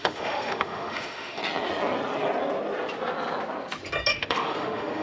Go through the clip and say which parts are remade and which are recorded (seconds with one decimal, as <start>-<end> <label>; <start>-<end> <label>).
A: 0.0-1.4 remade; 1.4-4.1 recorded; 4.1-5.0 remade

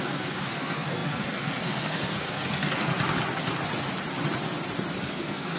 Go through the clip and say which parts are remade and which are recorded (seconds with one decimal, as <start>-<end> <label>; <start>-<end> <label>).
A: 0.0-2.9 remade; 2.9-5.0 recorded; 5.0-5.6 remade

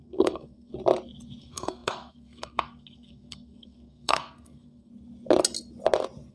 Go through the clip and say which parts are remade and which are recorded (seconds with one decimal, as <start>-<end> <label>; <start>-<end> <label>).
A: 0.0-0.7 remade; 0.7-1.4 recorded; 1.4-4.9 remade; 4.9-6.3 recorded

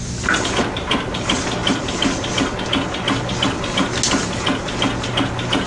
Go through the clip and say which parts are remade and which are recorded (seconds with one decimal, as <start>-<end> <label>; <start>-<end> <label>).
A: 0.0-5.7 recorded

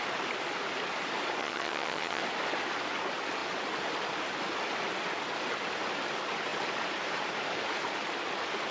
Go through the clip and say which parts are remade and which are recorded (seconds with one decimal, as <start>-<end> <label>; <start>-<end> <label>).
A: 0.0-1.4 recorded; 1.4-2.2 remade; 2.2-8.7 recorded

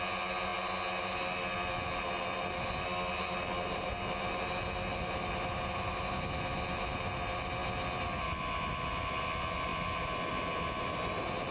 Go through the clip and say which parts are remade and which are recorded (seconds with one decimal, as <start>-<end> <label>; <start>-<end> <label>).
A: 0.0-11.5 recorded

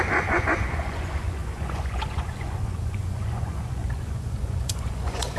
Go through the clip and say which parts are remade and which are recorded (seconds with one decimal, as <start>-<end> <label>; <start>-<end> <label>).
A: 0.0-5.4 remade

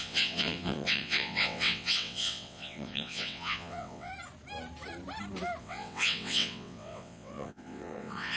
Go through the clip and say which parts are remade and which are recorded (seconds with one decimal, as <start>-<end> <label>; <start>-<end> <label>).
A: 0.0-4.1 remade; 4.1-5.6 recorded; 5.6-8.4 remade